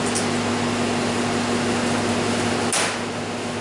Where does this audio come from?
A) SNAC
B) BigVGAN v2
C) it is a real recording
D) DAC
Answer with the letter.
C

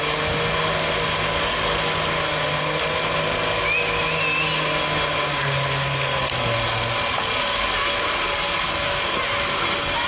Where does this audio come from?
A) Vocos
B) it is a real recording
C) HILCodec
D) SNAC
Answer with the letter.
B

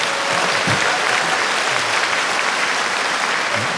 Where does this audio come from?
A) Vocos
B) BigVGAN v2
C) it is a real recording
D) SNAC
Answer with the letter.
C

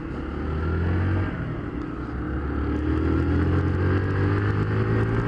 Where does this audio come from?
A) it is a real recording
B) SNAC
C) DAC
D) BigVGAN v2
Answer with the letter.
A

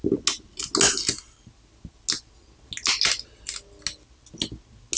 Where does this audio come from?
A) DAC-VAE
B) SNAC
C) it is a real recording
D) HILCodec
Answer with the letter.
C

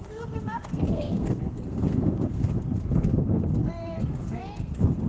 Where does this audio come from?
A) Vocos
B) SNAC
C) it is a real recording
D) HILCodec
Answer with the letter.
B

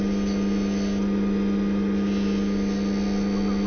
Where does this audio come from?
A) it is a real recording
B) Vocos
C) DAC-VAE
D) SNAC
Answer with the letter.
A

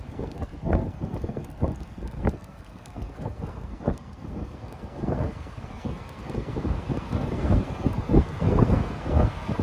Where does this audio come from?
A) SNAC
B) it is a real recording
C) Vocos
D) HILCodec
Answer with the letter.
A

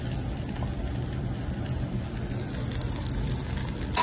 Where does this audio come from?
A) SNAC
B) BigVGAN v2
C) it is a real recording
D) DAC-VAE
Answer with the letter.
C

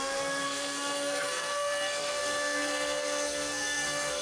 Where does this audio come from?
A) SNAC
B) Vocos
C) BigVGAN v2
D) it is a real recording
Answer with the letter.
A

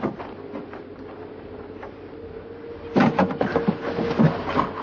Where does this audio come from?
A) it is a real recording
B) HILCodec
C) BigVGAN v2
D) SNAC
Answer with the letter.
A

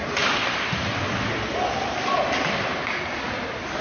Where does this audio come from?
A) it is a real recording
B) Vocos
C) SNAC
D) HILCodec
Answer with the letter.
A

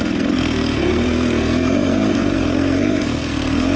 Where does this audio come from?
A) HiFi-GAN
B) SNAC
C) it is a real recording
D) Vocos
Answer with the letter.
B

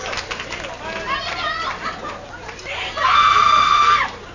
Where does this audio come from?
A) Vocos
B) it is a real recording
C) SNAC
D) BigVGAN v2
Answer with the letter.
B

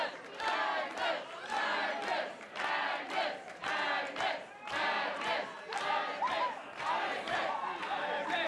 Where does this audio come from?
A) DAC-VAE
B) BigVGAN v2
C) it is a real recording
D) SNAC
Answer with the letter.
C